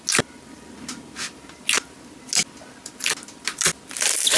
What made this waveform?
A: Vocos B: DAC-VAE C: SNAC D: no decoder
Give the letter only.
D